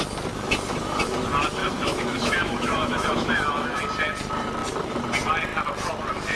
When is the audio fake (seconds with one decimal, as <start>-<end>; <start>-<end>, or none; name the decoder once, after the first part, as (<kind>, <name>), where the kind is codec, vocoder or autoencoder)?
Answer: 1.6-3.8 (autoencoder, DAC-VAE)